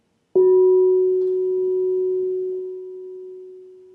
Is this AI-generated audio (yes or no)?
no